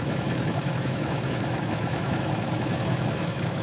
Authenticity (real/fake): fake